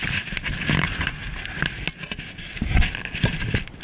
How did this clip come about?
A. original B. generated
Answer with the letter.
A